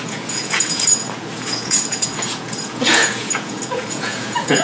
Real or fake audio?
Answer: fake